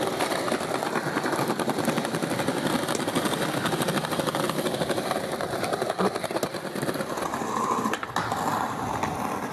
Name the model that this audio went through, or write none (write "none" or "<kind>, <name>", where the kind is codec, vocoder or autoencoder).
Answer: none